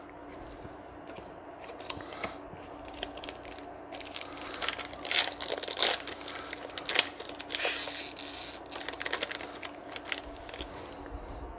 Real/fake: real